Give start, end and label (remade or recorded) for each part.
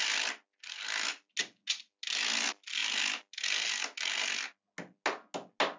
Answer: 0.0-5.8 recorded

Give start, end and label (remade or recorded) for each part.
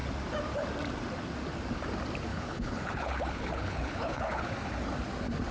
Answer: 0.0-2.3 recorded; 2.3-4.5 remade; 4.5-5.5 recorded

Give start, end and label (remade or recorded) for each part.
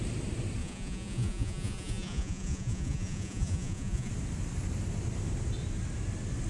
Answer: 0.0-0.6 recorded; 0.6-4.1 remade; 4.1-6.5 recorded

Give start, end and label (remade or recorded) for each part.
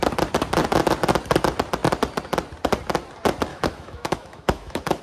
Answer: 0.0-3.5 recorded; 3.5-5.0 remade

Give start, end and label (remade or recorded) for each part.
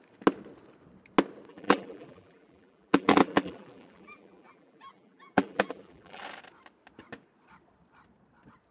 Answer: 0.0-1.5 recorded; 1.5-6.2 remade; 6.2-8.7 recorded